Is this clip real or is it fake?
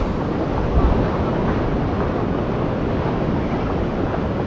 real